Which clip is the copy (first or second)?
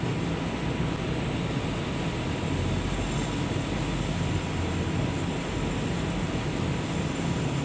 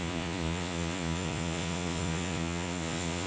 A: second